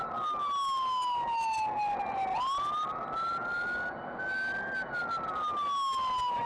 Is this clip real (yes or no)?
yes